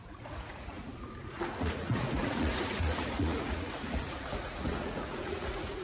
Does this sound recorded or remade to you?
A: remade